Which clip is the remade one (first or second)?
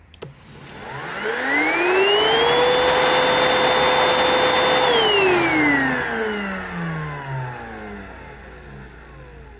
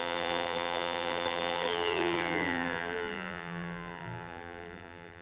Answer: second